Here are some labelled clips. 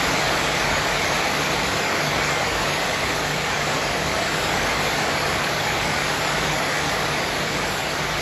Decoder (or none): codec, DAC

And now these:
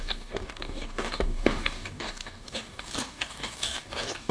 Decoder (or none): codec, DAC